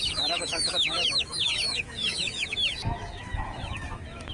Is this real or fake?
fake